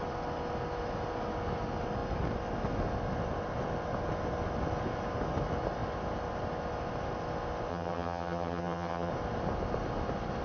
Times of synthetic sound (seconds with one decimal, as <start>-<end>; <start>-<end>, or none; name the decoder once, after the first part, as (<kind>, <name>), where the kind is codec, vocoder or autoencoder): 7.7-9.1 (vocoder, HiFi-GAN)